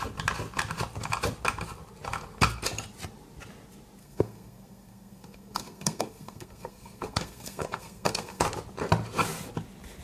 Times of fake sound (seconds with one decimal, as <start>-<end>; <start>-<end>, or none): 4.0-8.4